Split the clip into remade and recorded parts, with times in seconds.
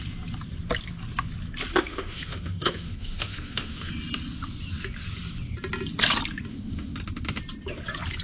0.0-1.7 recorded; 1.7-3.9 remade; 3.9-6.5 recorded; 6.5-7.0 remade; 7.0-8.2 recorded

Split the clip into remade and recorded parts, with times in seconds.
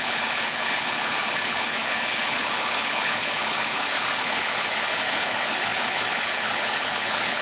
0.0-7.4 remade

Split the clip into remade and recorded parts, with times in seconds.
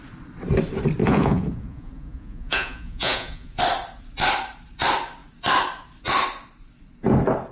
0.0-1.0 recorded; 1.0-3.6 remade; 3.6-7.5 recorded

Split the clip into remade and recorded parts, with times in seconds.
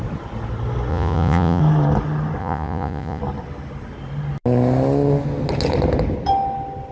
0.0-0.9 recorded; 0.9-1.6 remade; 1.6-2.4 recorded; 2.4-3.2 remade; 3.2-6.9 recorded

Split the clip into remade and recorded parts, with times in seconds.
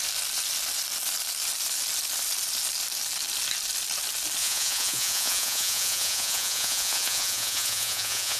0.0-4.4 recorded; 4.4-8.4 remade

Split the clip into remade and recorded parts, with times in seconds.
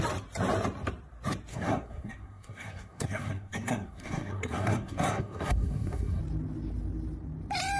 0.0-1.5 recorded; 1.5-6.2 remade; 6.2-7.8 recorded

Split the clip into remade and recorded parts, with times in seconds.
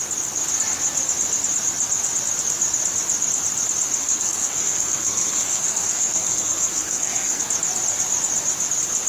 0.0-4.0 recorded; 4.0-7.4 remade; 7.4-9.1 recorded